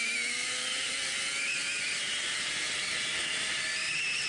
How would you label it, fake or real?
real